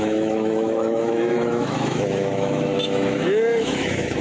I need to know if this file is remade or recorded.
remade